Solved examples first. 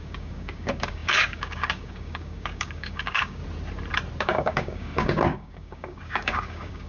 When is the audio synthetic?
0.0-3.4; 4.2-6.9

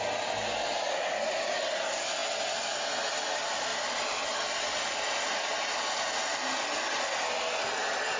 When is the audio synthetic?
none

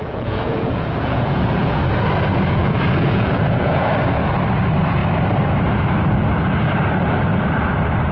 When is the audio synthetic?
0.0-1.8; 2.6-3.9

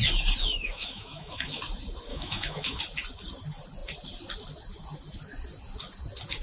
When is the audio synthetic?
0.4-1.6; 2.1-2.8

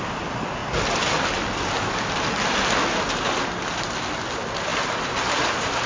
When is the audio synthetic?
0.6-1.9; 4.7-5.5